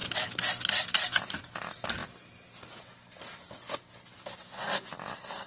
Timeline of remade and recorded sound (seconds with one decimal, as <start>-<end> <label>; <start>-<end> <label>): 0.0-5.5 recorded